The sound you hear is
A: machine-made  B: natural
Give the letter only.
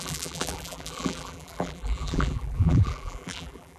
A